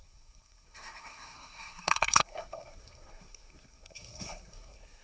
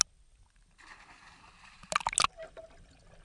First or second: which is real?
second